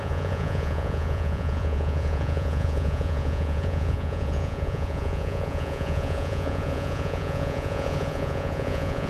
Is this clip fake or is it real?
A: fake